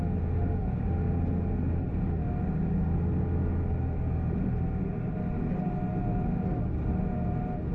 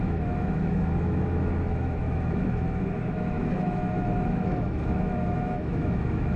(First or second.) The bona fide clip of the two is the first